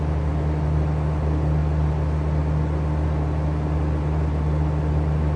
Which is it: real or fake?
real